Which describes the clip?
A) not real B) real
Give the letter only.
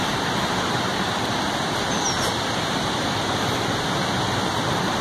B